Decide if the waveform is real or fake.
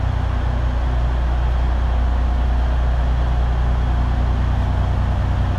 real